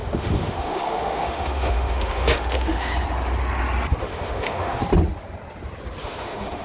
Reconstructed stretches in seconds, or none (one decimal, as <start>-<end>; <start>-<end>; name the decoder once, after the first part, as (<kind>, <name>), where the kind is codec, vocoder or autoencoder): 0.0-2.9 (autoencoder, DAC-VAE); 4.0-4.8; 6.0-6.6